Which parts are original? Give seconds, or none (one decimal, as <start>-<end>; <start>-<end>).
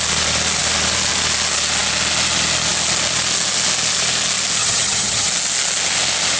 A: 0.0-4.6; 5.3-6.4